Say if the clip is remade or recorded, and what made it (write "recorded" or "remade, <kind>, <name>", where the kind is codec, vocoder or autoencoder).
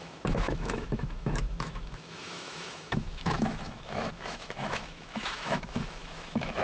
remade, autoencoder, DAC-VAE